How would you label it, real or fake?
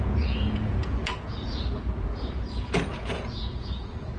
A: fake